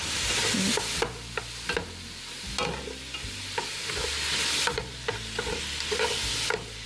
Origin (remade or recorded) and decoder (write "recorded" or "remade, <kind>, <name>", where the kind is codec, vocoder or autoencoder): recorded